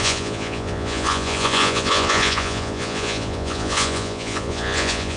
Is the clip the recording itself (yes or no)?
no